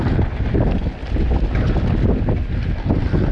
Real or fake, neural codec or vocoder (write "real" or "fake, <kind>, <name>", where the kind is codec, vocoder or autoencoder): real